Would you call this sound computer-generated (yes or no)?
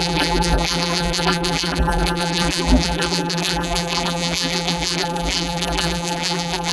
yes